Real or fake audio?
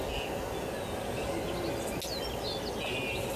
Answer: real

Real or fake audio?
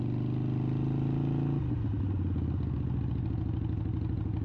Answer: real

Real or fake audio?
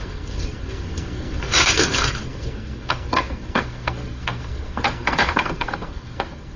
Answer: fake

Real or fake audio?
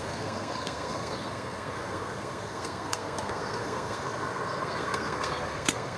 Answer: fake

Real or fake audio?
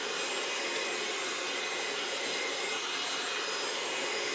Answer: real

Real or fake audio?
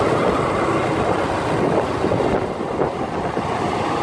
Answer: real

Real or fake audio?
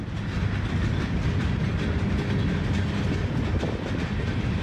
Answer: real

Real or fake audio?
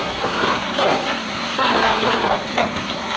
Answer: fake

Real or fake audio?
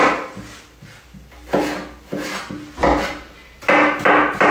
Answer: real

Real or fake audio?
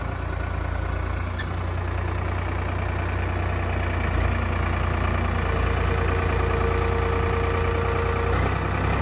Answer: real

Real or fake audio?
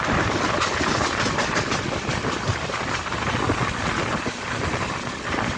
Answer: real